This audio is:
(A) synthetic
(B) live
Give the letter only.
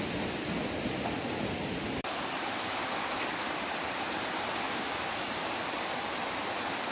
A